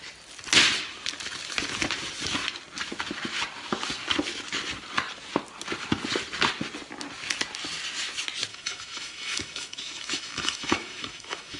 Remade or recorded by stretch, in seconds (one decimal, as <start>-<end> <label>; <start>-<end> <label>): 0.0-8.5 recorded; 8.5-11.6 remade